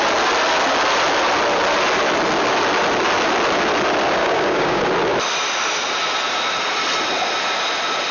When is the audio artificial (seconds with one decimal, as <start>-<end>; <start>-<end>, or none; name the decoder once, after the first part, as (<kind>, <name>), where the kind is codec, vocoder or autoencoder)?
4.2-4.8 (codec, DAC)